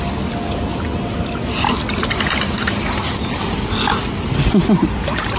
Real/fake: real